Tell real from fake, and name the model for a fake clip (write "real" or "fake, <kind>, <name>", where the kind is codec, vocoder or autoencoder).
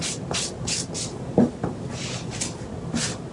real